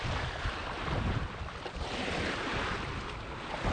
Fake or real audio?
real